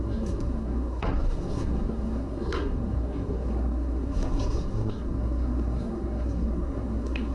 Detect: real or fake fake